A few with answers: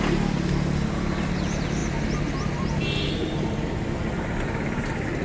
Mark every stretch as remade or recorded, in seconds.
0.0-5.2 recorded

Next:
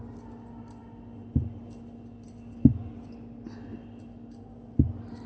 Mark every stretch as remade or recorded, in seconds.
0.0-5.3 recorded

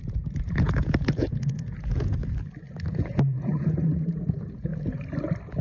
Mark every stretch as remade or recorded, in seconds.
0.0-2.2 remade; 2.2-2.9 recorded; 2.9-4.7 remade; 4.7-5.6 recorded

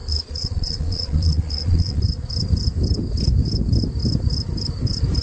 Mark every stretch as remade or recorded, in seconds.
0.0-2.0 remade; 2.0-5.2 recorded

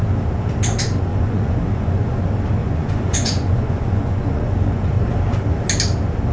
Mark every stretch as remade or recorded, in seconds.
0.0-1.1 recorded; 1.1-2.2 remade; 2.2-2.6 recorded; 2.6-4.9 remade; 4.9-6.3 recorded

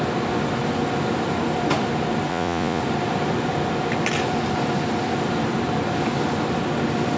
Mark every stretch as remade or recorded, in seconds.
0.0-2.3 recorded; 2.3-2.8 remade; 2.8-7.2 recorded

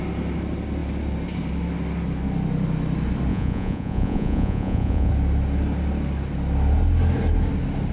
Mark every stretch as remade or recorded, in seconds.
0.0-3.3 recorded; 3.3-5.1 remade; 5.1-7.9 recorded